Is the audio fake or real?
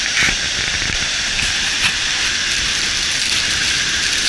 real